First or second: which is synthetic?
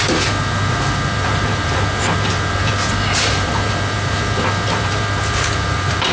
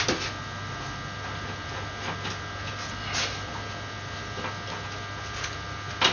first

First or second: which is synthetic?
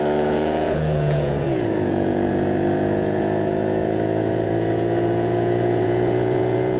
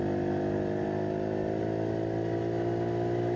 first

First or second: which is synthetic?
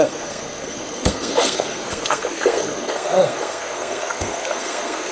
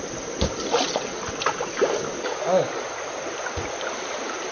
first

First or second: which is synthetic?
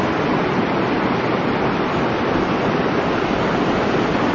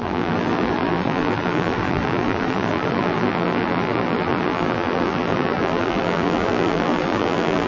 second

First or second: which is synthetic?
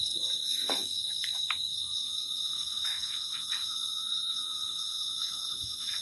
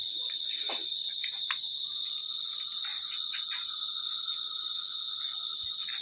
first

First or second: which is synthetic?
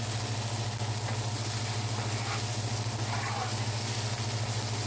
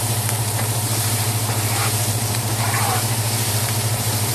second